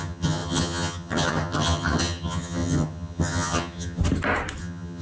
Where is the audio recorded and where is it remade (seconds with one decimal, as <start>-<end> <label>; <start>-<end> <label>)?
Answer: 0.0-4.0 remade; 4.0-4.6 recorded; 4.6-5.0 remade